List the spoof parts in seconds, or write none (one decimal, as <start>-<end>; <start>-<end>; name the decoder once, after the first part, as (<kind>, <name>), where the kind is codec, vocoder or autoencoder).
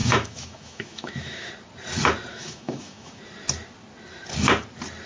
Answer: 0.0-1.5 (autoencoder, DAC-VAE); 2.3-3.2